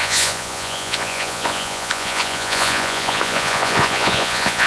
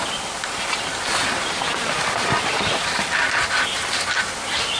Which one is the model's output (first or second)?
first